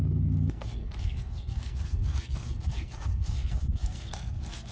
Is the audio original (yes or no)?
no